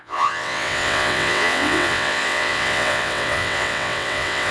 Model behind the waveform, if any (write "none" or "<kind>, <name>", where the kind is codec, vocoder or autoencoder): vocoder, WaveNeXt